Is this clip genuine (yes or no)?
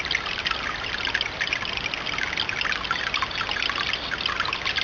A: yes